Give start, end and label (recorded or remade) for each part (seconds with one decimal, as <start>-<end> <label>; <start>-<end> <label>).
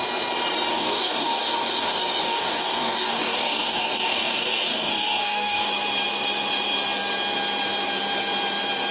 0.0-0.7 recorded; 0.7-5.7 remade; 5.7-8.9 recorded